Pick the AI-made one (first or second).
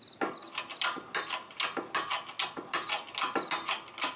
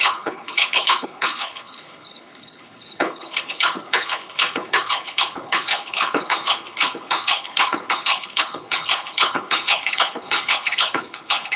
second